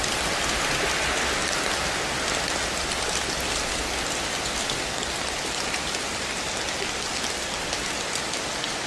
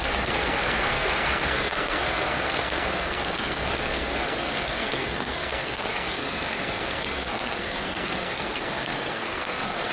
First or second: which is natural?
first